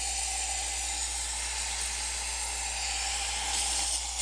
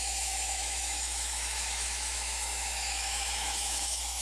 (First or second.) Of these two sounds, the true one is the first